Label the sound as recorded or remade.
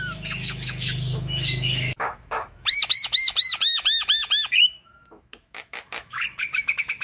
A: remade